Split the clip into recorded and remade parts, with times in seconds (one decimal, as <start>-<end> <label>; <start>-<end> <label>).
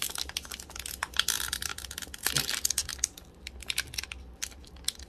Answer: 0.0-5.1 recorded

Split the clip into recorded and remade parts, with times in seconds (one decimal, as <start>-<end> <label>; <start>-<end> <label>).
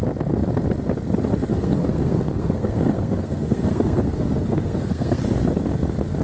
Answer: 0.0-1.5 recorded; 1.5-5.2 remade; 5.2-6.2 recorded